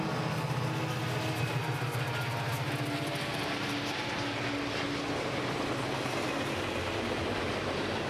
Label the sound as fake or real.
real